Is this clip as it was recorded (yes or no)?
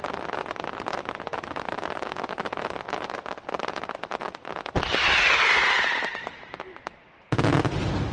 yes